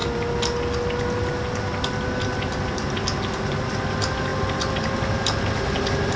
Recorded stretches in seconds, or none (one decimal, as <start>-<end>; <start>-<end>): 0.0-6.2